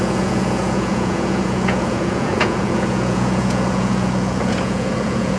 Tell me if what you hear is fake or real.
fake